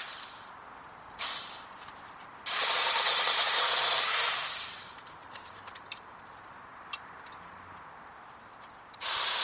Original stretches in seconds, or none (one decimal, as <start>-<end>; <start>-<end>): none